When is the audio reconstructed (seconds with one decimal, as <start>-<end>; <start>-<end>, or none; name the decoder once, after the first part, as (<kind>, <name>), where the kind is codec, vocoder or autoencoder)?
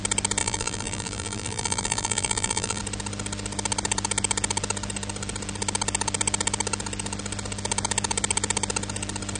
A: 0.4-2.8 (vocoder, BigVGAN v2)